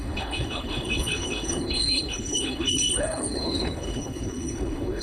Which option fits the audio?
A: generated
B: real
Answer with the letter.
A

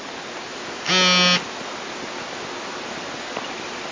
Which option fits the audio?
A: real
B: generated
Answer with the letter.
A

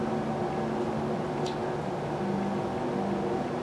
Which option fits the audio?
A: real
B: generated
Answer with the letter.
A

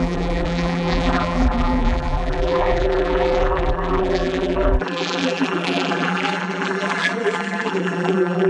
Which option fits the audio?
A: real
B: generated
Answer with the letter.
B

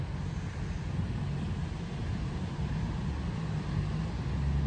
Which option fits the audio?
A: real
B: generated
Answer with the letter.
A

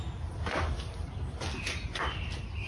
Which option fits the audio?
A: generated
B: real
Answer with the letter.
B